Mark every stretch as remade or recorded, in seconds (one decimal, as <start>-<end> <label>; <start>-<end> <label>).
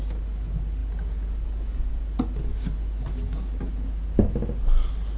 0.0-5.2 recorded